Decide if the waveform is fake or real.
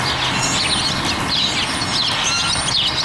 real